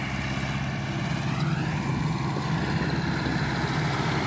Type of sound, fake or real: real